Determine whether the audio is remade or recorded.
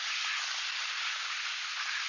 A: recorded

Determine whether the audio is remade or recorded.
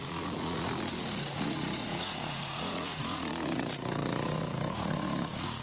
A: remade